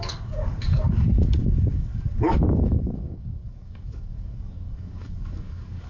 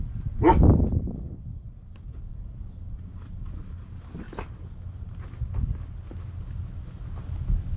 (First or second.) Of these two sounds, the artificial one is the first